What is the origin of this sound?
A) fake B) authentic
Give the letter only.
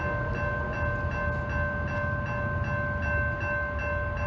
B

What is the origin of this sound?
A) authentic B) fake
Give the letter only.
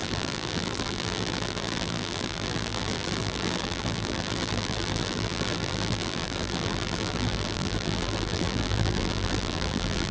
B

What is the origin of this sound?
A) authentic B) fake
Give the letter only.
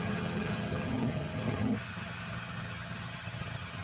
B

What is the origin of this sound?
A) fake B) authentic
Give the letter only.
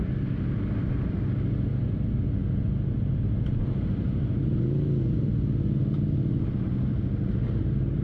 B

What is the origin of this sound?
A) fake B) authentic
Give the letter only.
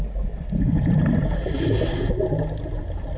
B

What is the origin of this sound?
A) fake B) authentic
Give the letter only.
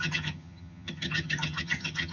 A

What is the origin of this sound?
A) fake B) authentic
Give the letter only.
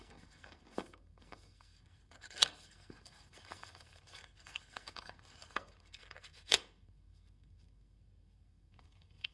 A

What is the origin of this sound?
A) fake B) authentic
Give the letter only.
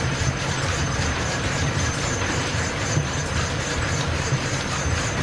A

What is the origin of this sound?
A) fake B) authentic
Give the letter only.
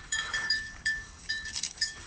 A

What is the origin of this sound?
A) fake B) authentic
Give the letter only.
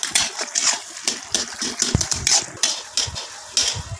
B